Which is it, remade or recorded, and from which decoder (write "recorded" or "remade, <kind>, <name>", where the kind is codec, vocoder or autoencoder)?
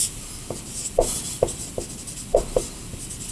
recorded